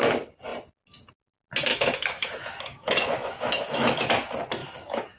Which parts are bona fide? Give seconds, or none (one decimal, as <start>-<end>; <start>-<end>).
0.0-1.7; 4.1-4.6